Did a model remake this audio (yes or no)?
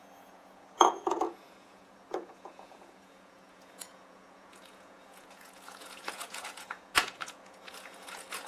yes